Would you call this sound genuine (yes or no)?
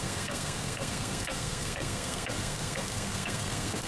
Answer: no